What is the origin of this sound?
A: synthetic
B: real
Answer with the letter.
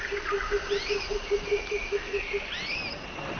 B